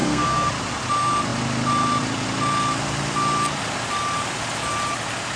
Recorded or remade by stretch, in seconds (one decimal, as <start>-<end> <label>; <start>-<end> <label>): 0.0-0.5 remade; 0.5-5.4 recorded